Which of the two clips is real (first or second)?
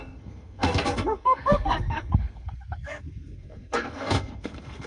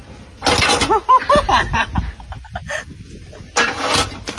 second